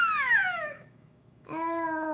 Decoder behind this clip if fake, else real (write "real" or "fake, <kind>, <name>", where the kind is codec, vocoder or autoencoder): fake, autoencoder, DAC-VAE